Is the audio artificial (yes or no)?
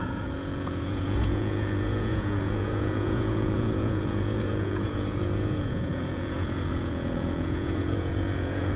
yes